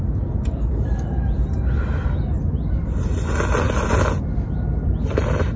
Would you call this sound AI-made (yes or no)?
no